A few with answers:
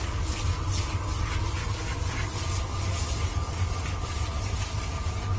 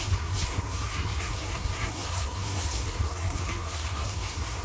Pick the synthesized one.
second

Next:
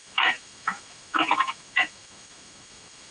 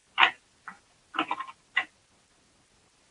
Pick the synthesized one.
first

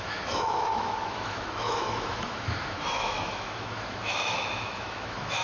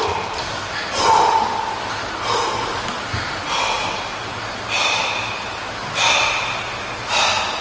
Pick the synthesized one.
first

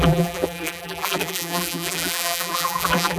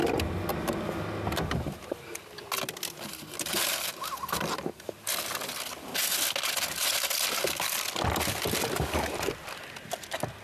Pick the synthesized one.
first